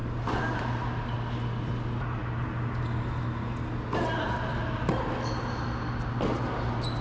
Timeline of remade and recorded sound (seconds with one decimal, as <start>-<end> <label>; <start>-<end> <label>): 0.0-7.0 recorded